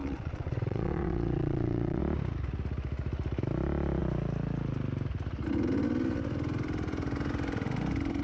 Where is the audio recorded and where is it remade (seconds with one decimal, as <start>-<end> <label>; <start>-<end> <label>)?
0.0-2.0 remade; 2.0-8.2 recorded